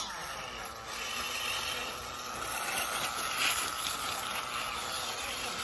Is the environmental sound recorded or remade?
recorded